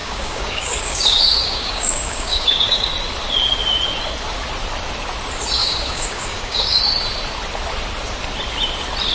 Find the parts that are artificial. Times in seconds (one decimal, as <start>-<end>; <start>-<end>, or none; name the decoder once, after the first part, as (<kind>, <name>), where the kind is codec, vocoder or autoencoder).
0.0-2.9 (codec, DAC); 5.6-6.8